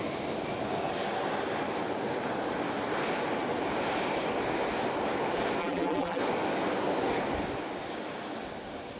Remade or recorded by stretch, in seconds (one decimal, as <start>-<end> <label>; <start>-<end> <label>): 0.0-5.6 recorded; 5.6-6.2 remade; 6.2-9.0 recorded